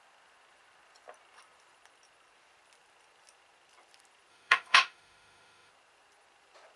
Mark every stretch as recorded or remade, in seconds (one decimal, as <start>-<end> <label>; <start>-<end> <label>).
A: 0.0-4.3 recorded; 4.3-5.7 remade; 5.7-6.8 recorded